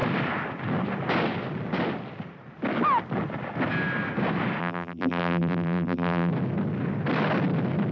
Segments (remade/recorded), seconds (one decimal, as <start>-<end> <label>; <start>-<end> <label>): 0.0-4.6 recorded; 4.6-6.3 remade; 6.3-7.9 recorded